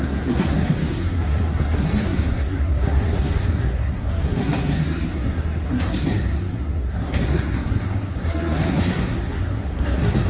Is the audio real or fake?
fake